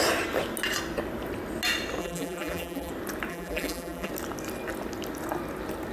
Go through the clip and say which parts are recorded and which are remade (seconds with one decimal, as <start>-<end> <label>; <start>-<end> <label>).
0.0-2.0 recorded; 2.0-2.9 remade; 2.9-3.3 recorded; 3.3-4.1 remade; 4.1-5.9 recorded